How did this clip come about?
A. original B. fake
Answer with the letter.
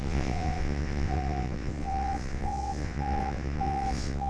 B